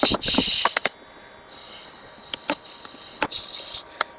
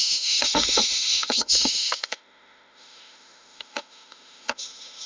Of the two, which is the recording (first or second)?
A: first